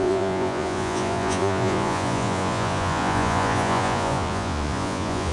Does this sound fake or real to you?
fake